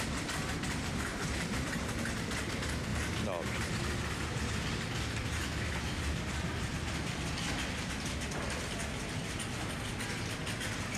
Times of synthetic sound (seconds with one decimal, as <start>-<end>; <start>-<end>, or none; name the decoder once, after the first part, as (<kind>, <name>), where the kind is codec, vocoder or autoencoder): 1.1-2.1 (vocoder, BigVGAN v2); 2.9-3.9